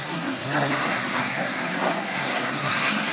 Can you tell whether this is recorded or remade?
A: remade